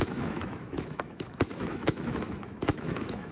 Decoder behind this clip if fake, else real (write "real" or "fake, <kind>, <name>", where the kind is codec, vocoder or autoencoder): fake, autoencoder, DAC-VAE